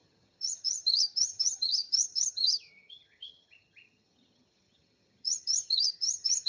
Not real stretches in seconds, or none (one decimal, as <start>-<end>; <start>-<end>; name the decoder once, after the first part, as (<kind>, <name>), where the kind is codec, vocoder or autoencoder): 0.0-6.5 (vocoder, HiFi-GAN)